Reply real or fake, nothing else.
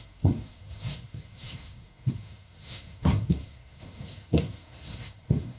fake